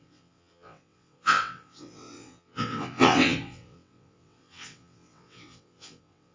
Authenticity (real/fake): fake